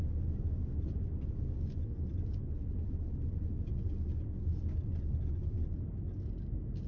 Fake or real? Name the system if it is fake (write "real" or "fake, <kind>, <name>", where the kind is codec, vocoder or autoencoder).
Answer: real